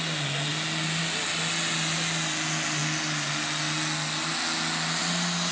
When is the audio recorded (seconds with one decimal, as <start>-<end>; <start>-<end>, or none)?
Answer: 0.0-5.5